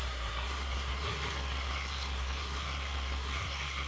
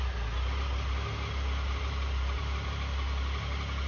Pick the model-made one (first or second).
first